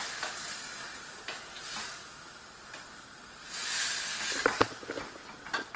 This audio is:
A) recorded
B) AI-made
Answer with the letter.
A